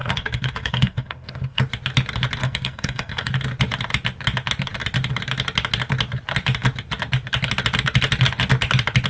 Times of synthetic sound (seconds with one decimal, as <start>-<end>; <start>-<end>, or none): 0.0-1.6; 2.4-3.3